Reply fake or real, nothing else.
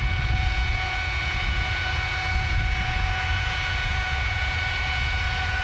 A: fake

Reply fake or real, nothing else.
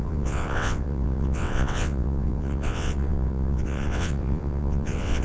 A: fake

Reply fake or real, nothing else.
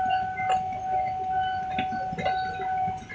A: real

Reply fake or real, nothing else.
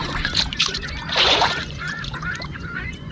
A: fake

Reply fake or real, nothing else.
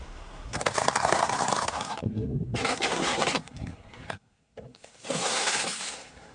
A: fake